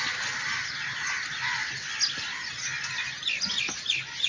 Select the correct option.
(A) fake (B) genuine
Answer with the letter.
B